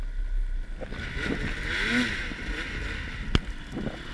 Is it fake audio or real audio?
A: real